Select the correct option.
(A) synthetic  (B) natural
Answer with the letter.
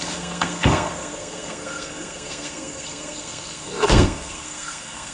A